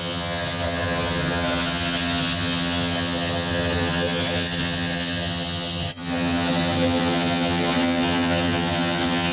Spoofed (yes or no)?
yes